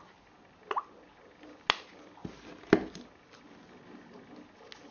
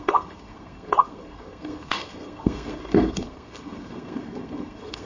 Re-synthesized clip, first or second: second